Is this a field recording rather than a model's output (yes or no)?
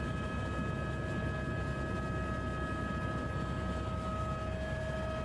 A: yes